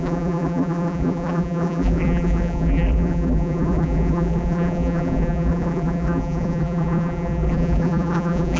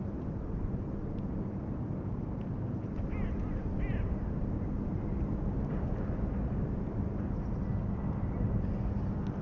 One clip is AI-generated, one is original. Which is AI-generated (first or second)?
first